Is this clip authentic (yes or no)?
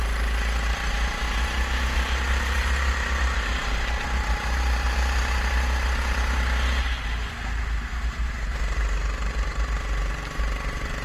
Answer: yes